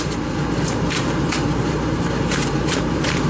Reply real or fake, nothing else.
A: fake